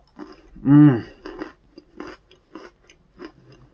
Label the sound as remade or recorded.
recorded